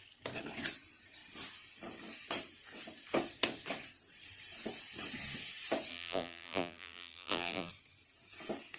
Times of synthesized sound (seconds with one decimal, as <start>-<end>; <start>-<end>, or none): 5.9-7.7